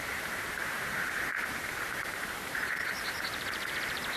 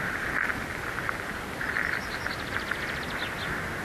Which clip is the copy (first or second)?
first